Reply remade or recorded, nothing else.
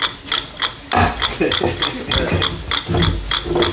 recorded